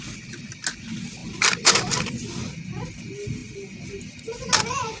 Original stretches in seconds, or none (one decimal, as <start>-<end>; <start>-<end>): 0.0-5.0